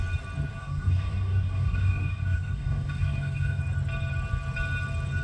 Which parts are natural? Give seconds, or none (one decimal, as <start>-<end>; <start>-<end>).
0.0-0.6; 3.6-5.2